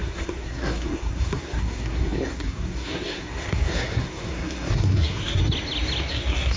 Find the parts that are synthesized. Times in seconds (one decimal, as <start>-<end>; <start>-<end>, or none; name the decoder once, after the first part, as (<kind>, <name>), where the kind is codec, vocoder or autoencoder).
0.0-5.4 (codec, SNAC); 6.1-6.6